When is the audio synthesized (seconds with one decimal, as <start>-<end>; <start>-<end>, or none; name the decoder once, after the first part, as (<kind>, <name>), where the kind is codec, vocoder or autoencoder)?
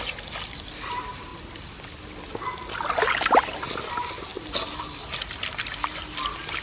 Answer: none